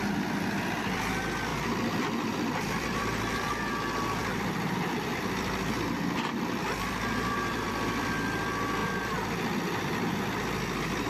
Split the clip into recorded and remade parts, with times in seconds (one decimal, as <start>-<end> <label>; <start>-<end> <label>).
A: 0.0-1.5 recorded; 1.5-3.6 remade; 3.6-4.2 recorded; 4.2-8.1 remade; 8.1-8.8 recorded; 8.8-10.2 remade; 10.2-11.1 recorded